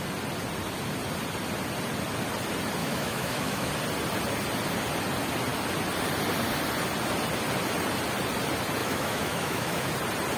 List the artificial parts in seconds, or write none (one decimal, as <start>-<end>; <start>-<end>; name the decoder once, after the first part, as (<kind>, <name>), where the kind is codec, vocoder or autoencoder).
2.8-3.7 (autoencoder, DAC-VAE); 8.8-9.9